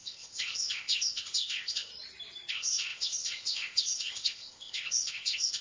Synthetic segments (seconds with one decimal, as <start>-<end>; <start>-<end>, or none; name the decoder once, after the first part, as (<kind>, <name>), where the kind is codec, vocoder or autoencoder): 0.0-1.9 (codec, ZipCodec); 2.5-5.6